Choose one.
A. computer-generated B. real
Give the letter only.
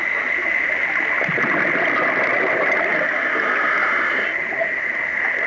B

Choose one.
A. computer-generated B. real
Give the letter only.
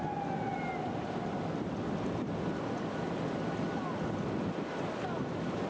B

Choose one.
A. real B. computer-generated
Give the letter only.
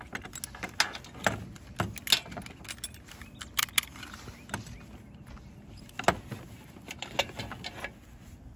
A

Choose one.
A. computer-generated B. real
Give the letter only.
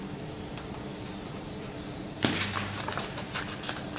A